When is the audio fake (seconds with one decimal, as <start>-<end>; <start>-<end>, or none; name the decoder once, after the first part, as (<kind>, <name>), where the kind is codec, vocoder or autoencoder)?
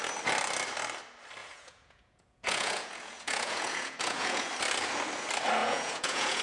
1.4-4.5 (vocoder, Vocos); 5.6-6.4